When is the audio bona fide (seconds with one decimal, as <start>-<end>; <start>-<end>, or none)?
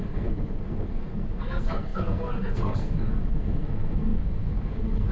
none